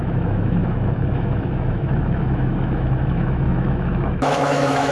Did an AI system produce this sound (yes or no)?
yes